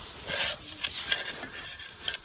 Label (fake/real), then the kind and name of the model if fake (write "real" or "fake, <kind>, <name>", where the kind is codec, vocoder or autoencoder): fake, vocoder, BigVGAN v2